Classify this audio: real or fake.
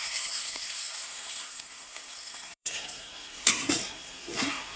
fake